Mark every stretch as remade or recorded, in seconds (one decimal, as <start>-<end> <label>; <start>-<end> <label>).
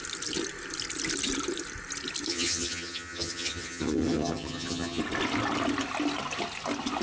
0.0-2.3 recorded; 2.3-5.0 remade; 5.0-7.0 recorded